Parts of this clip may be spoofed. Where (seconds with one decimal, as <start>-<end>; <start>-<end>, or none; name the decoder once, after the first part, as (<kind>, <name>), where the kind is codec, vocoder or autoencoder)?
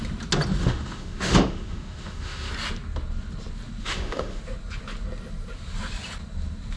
0.6-2.5 (autoencoder, DAC-VAE); 3.8-4.4